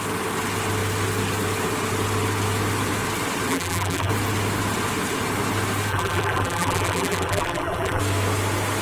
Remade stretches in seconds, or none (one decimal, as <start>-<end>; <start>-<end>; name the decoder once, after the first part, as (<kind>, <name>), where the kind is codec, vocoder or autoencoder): 3.5-4.1 (vocoder, BigVGAN v2); 5.9-8.0